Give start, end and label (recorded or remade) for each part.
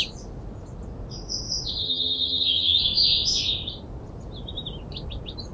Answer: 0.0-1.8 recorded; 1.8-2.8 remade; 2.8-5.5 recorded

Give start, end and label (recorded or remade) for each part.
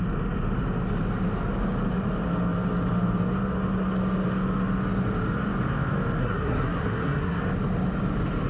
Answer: 0.0-6.2 recorded; 6.2-7.4 remade; 7.4-8.5 recorded